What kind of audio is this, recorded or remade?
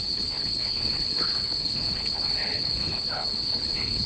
remade